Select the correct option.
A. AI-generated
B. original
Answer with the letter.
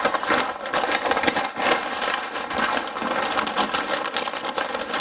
B